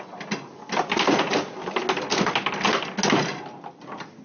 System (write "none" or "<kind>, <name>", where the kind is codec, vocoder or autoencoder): none